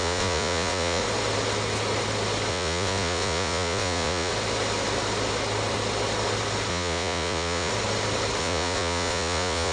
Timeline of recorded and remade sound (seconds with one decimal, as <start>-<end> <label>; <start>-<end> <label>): 0.0-1.0 remade; 1.0-2.5 recorded; 2.5-4.3 remade; 4.3-6.7 recorded; 6.7-7.7 remade; 7.7-8.4 recorded; 8.4-9.7 remade